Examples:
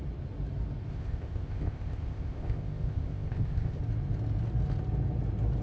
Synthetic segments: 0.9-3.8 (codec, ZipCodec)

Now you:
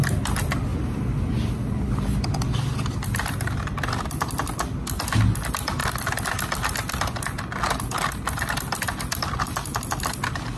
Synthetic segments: none

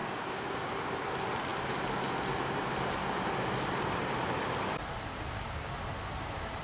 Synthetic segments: 0.0-0.9 (codec, DAC); 5.1-5.7

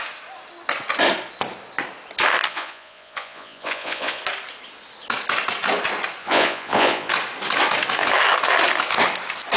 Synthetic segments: 2.5-4.2 (vocoder, Vocos); 6.2-7.1

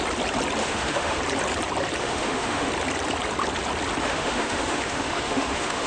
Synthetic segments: 0.6-1.2 (autoencoder, DAC-VAE); 2.0-2.7; 4.0-5.9

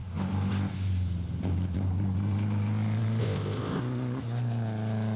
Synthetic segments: 3.2-3.8 (codec, ZipCodec)